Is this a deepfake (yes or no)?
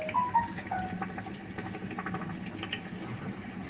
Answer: no